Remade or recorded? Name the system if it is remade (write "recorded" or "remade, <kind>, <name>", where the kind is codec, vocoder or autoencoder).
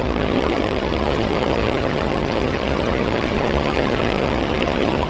remade, vocoder, HiFi-GAN